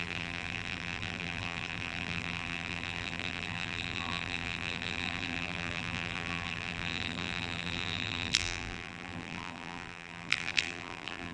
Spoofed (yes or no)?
yes